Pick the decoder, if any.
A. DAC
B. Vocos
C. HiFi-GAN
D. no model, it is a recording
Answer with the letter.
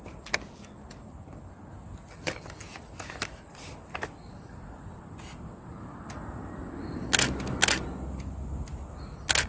D